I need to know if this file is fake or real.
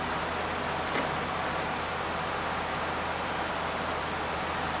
real